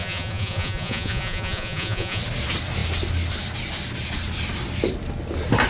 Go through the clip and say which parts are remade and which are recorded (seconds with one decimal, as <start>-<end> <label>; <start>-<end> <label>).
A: 0.0-2.2 remade; 2.2-5.7 recorded